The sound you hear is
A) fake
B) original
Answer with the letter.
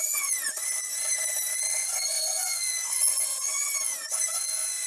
A